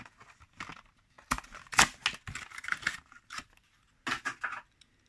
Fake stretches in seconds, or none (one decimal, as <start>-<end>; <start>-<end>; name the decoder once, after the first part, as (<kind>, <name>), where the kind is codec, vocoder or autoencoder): none